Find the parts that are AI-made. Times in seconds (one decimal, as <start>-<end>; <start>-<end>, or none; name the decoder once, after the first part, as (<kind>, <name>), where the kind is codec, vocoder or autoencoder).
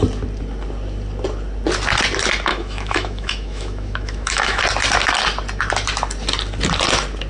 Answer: 2.5-4.6 (autoencoder, DAC-VAE)